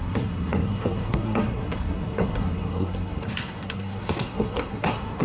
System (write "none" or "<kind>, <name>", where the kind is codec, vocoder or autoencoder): codec, SNAC